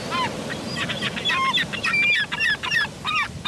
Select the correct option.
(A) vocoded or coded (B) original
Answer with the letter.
B